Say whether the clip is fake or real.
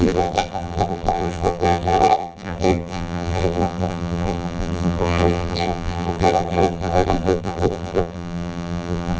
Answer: fake